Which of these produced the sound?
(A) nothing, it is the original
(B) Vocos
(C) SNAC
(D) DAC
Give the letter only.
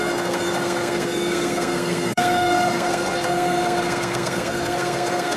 C